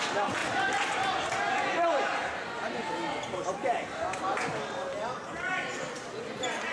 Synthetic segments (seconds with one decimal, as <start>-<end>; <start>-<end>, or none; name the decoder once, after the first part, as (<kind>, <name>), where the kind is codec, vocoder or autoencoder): none